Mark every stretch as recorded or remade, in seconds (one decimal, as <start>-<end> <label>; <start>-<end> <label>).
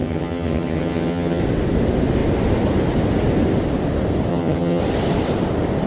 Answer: 0.0-1.4 remade; 1.4-4.3 recorded; 4.3-4.8 remade; 4.8-5.9 recorded